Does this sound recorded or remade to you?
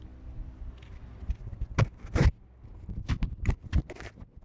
recorded